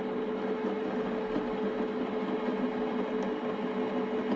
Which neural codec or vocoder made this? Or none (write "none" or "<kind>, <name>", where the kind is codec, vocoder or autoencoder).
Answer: none